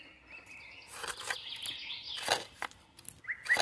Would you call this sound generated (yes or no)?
no